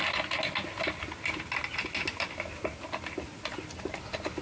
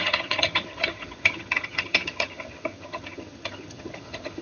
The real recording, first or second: first